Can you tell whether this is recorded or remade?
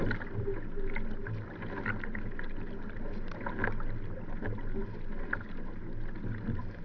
recorded